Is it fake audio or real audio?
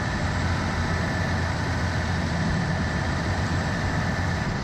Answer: fake